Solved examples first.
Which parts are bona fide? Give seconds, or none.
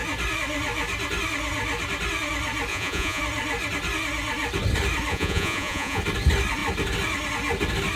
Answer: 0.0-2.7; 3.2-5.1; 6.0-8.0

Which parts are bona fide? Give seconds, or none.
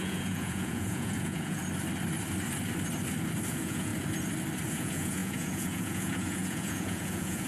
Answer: 1.6-3.5; 3.9-4.7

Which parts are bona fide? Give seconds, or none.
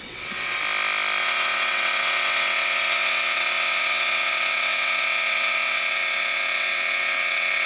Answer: 0.6-1.2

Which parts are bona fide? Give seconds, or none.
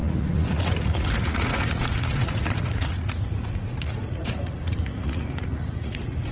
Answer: none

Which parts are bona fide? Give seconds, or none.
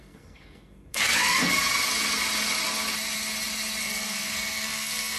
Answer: 1.5-3.8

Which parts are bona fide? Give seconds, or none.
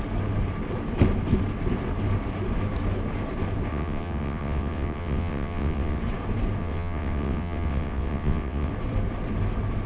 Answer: 0.0-3.7; 6.0-6.6; 8.7-9.9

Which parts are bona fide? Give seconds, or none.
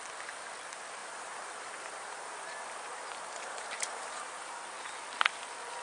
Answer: 0.0-1.0; 4.5-5.8